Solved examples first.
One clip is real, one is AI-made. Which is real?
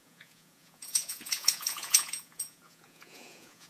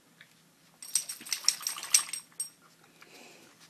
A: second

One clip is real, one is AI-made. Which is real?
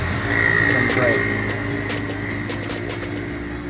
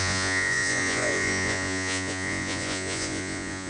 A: first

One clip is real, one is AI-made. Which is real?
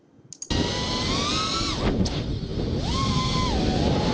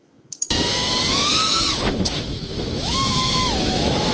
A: first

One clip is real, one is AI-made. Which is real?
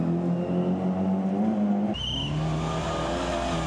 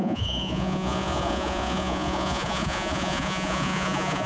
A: first